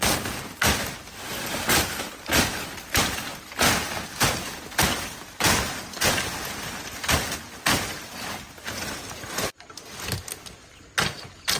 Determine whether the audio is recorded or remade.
recorded